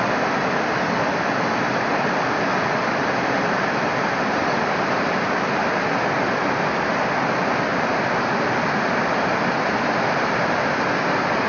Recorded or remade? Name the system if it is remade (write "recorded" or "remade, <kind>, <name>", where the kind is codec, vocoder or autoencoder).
recorded